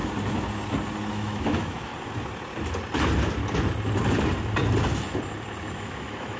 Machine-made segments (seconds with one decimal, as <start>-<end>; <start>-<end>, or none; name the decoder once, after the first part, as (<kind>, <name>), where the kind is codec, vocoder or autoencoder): 1.1-1.9 (autoencoder, DAC-VAE); 5.7-6.4